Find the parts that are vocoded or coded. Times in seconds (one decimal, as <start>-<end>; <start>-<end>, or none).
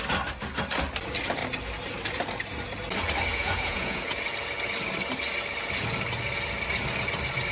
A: 3.3-4.2